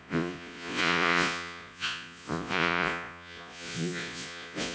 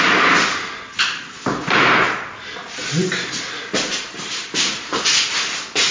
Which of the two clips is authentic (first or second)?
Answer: second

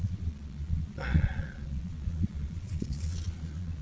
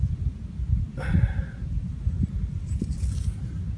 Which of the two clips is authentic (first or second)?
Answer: second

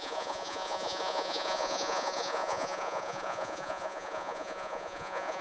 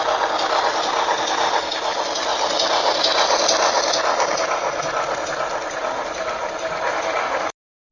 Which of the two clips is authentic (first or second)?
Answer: second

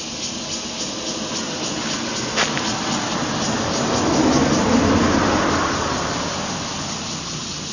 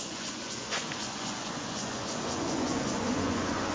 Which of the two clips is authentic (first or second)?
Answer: first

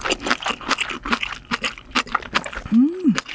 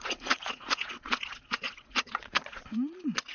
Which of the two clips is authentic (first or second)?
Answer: first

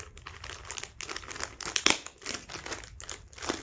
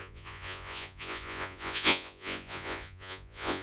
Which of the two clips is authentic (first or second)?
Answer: first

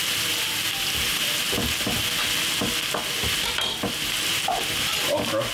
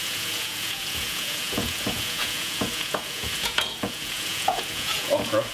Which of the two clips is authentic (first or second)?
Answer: first